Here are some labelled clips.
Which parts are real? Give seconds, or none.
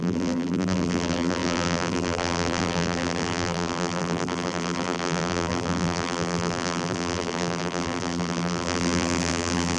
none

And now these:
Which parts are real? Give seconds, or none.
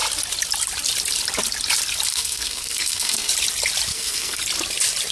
0.0-2.1; 3.3-3.9; 4.4-5.1